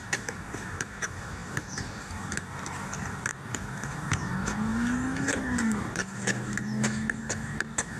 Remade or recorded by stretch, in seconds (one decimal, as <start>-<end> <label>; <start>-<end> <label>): 0.0-8.0 remade